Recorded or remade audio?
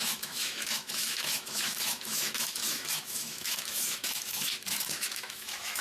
remade